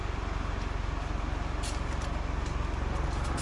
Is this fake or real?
real